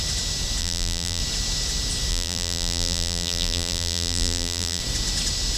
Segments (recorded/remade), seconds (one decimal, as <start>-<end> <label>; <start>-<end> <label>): 0.0-0.6 recorded; 0.6-1.2 remade; 1.2-2.1 recorded; 2.1-4.8 remade; 4.8-5.6 recorded